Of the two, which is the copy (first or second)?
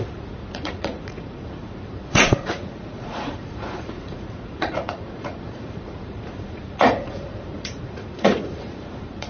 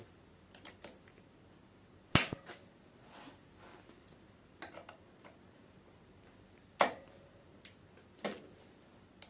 first